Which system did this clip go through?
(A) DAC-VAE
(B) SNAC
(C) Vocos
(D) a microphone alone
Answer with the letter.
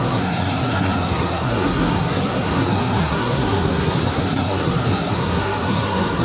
B